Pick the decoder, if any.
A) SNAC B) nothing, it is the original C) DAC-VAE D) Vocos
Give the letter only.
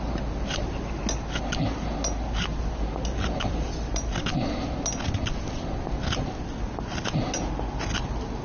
B